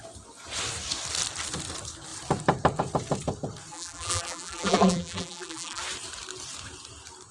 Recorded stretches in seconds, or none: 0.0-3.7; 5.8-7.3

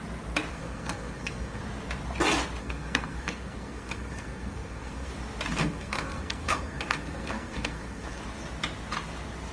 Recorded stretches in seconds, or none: 0.0-0.5; 1.6-2.6; 5.1-5.5; 8.2-9.5

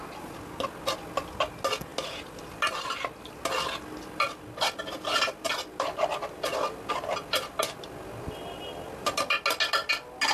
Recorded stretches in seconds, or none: 0.0-10.3

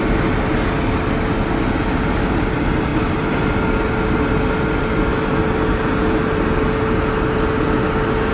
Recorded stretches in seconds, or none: 0.0-8.3

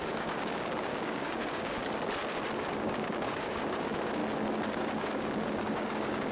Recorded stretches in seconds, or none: 1.8-2.8; 4.2-4.7